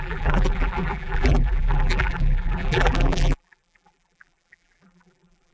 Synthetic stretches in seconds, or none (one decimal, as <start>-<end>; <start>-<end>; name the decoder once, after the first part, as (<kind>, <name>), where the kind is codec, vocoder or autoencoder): 0.0-5.5 (vocoder, BigVGAN v2)